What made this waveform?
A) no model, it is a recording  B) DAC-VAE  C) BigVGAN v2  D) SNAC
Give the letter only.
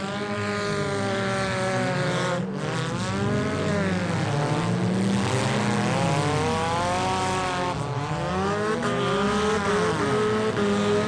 A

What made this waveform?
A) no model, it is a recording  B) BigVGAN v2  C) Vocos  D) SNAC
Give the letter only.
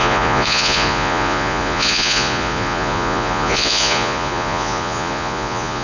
C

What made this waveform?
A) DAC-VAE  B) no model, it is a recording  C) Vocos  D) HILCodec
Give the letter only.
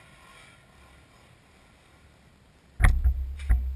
B